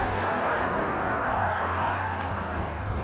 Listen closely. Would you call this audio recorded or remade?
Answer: remade